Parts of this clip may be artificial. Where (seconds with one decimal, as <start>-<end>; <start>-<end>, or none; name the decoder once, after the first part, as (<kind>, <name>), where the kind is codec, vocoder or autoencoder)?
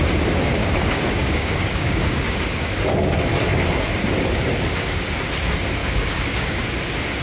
0.6-2.7 (codec, DAC); 5.8-6.6